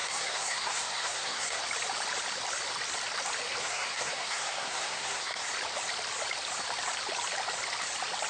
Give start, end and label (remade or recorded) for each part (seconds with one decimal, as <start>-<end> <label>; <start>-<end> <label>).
0.0-1.6 remade; 1.6-3.6 recorded; 3.6-5.5 remade; 5.5-8.3 recorded